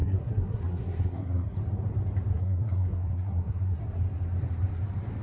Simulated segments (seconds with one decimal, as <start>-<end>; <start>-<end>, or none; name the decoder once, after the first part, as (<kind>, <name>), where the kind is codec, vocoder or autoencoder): 0.0-1.6 (codec, SNAC); 2.3-3.8

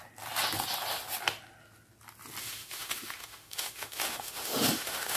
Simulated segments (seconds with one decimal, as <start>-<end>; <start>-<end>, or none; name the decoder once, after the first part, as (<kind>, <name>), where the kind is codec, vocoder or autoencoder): 2.4-5.2 (autoencoder, DAC-VAE)

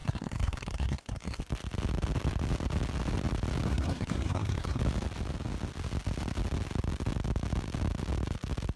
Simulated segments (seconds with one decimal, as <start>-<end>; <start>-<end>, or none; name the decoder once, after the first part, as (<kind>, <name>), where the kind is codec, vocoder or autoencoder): 0.0-1.4 (codec, SNAC); 3.7-4.8

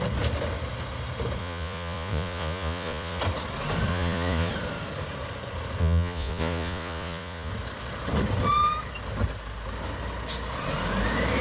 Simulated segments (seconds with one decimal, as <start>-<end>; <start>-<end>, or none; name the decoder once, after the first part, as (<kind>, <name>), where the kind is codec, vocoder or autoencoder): 1.4-3.2 (vocoder, Vocos); 3.9-4.5; 5.8-7.5